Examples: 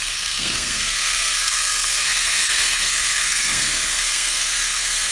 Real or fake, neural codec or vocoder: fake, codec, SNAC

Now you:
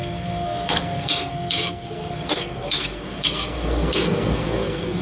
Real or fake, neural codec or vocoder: fake, codec, SNAC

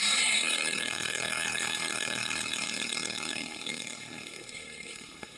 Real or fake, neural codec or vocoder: fake, codec, SNAC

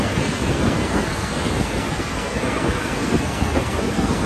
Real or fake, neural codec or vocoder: fake, codec, SNAC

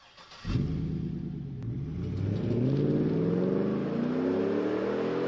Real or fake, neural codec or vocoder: real